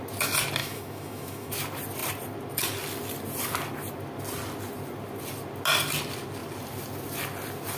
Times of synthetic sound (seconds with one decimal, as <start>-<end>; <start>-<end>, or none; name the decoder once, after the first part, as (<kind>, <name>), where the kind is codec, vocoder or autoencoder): 0.6-1.5 (autoencoder, DAC-VAE)